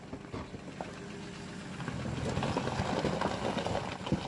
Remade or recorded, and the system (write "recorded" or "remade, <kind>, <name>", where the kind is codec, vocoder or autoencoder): recorded